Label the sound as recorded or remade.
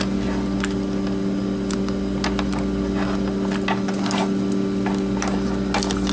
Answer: recorded